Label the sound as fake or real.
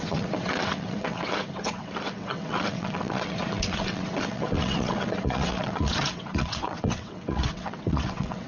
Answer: fake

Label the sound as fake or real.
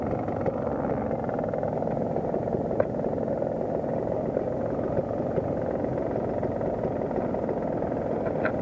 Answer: real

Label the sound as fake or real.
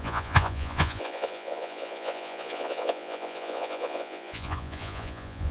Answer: fake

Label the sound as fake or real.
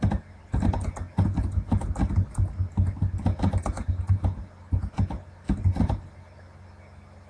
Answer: real